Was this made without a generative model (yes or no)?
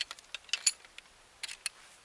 yes